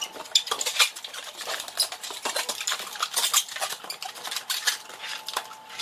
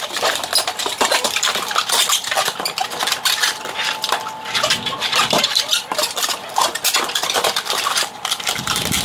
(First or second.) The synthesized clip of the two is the second